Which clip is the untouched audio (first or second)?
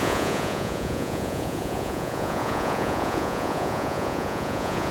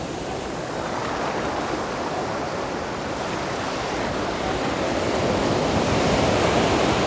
second